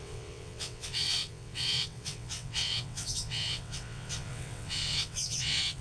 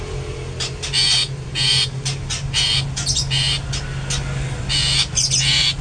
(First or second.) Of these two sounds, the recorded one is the second